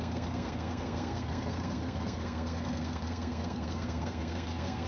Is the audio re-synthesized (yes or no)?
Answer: yes